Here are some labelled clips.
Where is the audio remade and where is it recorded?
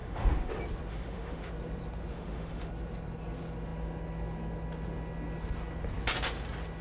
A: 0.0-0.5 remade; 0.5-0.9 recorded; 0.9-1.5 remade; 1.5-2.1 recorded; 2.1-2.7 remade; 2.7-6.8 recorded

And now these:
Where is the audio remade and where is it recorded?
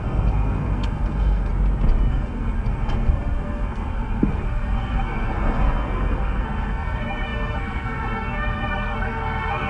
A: 0.0-1.5 remade; 1.5-2.1 recorded; 2.1-9.7 remade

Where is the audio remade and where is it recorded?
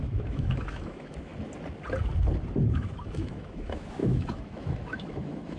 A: 0.0-1.3 remade; 1.3-2.6 recorded; 2.6-5.6 remade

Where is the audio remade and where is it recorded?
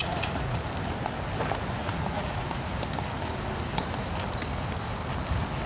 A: 0.0-0.7 remade; 0.7-1.8 recorded; 1.8-2.8 remade; 2.8-5.7 recorded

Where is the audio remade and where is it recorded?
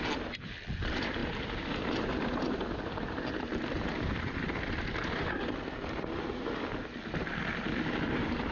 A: 0.0-8.5 recorded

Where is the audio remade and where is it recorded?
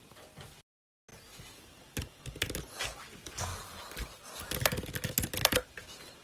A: 0.0-1.1 recorded; 1.1-2.2 remade; 2.2-3.5 recorded; 3.5-4.4 remade; 4.4-6.2 recorded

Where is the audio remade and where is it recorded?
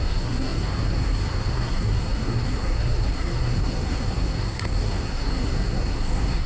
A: 0.0-6.5 remade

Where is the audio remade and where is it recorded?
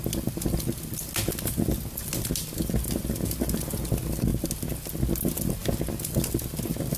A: 0.0-7.0 recorded